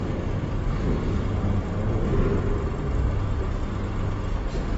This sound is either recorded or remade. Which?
recorded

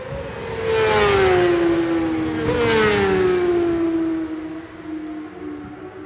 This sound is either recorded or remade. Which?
recorded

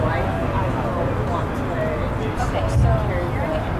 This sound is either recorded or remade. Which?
recorded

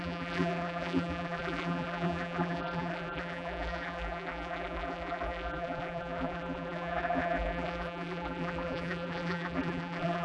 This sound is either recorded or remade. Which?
remade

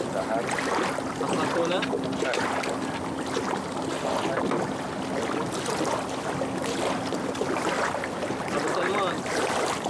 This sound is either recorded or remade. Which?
recorded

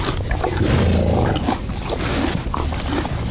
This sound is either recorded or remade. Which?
recorded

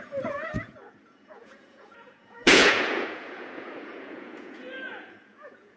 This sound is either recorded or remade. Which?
remade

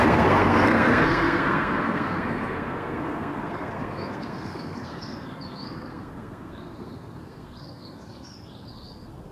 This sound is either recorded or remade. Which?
remade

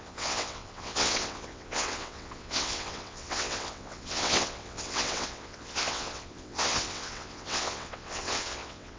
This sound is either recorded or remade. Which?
remade